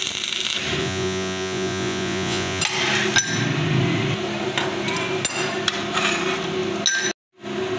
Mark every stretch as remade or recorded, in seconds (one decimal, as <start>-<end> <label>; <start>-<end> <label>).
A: 0.0-0.8 recorded; 0.8-2.6 remade; 2.6-7.8 recorded